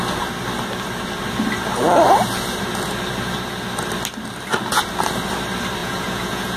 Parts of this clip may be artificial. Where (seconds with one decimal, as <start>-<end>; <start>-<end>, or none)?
5.8-6.6